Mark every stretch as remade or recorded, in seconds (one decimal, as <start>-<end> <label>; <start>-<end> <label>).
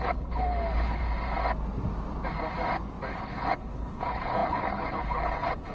0.0-1.0 remade; 1.0-3.1 recorded; 3.1-5.7 remade